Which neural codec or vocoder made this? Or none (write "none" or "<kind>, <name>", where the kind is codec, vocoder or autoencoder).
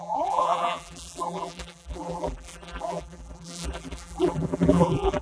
vocoder, BigVGAN v2